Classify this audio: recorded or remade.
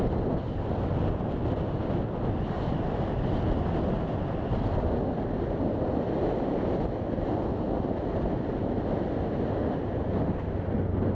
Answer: recorded